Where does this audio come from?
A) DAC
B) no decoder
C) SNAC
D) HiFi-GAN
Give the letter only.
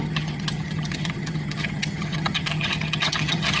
D